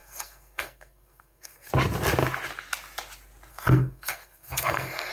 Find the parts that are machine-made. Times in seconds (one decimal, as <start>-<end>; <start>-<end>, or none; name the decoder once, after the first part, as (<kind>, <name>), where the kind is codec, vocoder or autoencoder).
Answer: 0.0-1.7 (codec, SNAC); 3.5-5.1

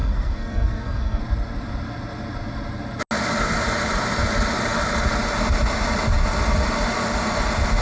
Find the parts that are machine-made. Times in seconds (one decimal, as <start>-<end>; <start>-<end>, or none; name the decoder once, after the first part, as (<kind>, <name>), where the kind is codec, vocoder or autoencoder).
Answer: 0.0-1.2 (codec, SNAC)

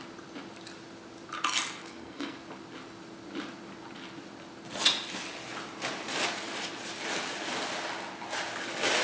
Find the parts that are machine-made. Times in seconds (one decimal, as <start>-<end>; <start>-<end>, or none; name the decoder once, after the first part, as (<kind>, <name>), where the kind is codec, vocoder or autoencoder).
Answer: 1.8-2.4 (codec, SNAC)

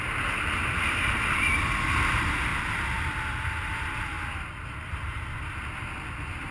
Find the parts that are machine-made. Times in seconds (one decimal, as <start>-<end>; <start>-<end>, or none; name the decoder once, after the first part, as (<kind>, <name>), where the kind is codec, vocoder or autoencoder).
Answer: none

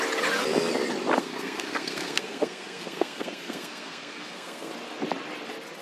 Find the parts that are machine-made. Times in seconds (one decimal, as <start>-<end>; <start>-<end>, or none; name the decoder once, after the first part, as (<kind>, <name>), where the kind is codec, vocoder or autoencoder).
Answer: 1.2-4.7 (codec, SNAC)